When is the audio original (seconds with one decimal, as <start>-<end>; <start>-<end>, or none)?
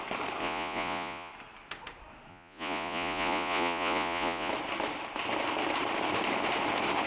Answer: 0.0-0.4; 1.3-2.3; 4.5-7.1